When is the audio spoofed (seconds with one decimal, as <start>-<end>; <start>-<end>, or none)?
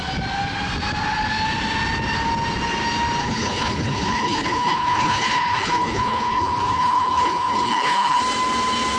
3.2-8.2